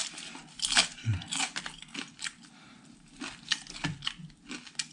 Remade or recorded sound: recorded